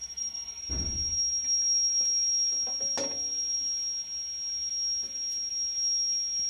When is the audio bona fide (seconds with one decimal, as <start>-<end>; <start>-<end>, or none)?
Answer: 0.6-6.5